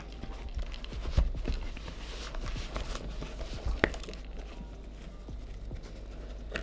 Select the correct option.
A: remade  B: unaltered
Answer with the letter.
B